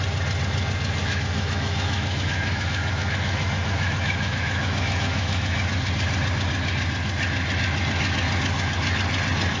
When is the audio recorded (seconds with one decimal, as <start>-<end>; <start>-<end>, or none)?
0.0-1.0; 5.7-9.6